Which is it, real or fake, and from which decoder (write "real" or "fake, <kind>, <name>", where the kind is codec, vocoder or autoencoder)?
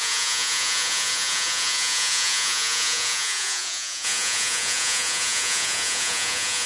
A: fake, vocoder, Vocos